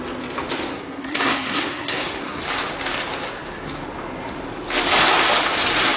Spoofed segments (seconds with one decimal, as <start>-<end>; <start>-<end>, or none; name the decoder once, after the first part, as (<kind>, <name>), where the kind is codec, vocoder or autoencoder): 0.7-2.4 (codec, SNAC)